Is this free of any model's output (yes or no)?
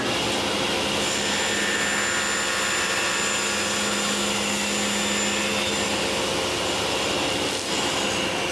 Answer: yes